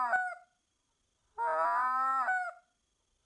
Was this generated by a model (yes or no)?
no